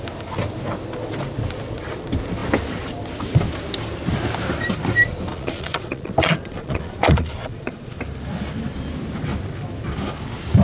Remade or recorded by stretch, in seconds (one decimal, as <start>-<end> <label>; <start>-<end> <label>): 0.0-5.3 recorded; 5.3-8.0 remade; 8.0-10.6 recorded